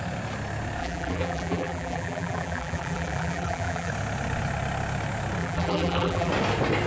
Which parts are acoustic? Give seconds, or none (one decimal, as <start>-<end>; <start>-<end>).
0.0-0.8; 3.9-5.4; 6.3-6.9